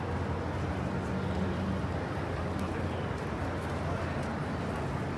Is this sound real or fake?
real